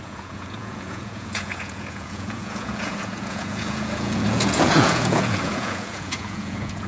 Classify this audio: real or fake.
fake